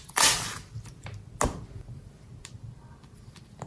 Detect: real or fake real